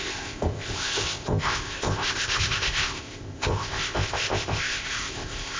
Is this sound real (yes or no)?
no